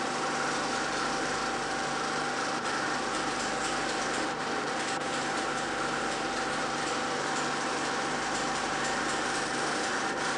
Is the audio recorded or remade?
remade